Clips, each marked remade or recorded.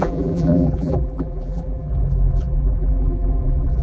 remade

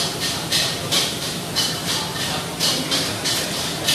remade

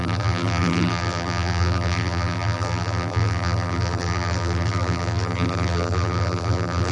remade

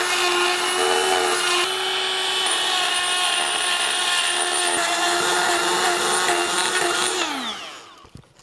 recorded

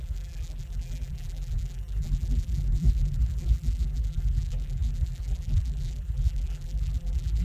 remade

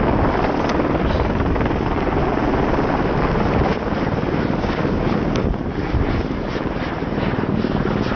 recorded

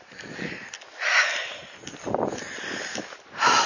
recorded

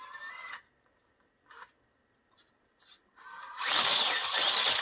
recorded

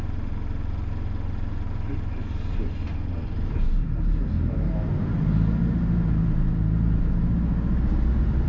remade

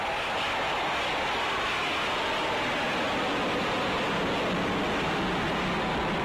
recorded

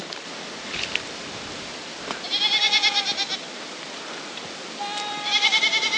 remade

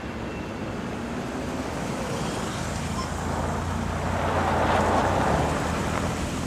recorded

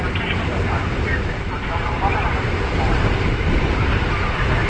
remade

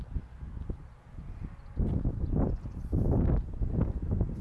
recorded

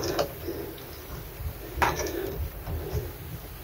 recorded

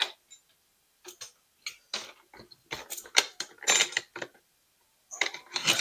recorded